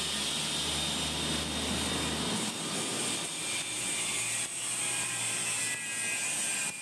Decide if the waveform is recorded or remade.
recorded